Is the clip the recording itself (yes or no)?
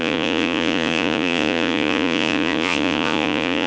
no